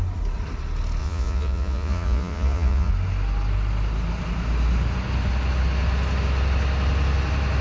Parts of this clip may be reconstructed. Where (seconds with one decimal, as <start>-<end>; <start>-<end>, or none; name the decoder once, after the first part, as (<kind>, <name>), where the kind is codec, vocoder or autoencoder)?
1.0-2.9 (vocoder, Vocos)